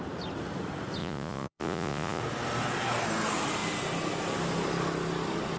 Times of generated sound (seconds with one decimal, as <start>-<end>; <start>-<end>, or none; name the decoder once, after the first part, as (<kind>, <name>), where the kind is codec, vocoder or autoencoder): 1.0-2.2 (vocoder, Vocos)